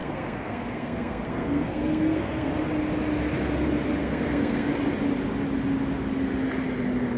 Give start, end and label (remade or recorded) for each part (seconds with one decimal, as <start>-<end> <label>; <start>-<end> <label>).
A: 0.0-2.5 remade; 2.5-4.0 recorded; 4.0-4.7 remade; 4.7-7.2 recorded